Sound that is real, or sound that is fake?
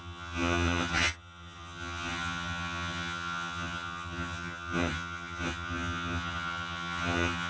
fake